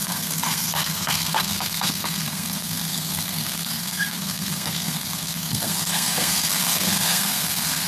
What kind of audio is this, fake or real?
fake